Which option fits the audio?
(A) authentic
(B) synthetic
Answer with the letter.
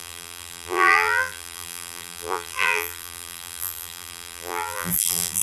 B